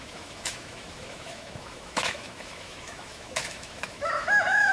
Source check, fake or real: fake